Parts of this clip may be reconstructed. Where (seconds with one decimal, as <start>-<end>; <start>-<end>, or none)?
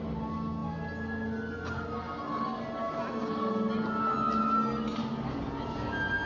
none